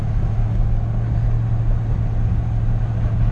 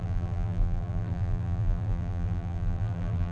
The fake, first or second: second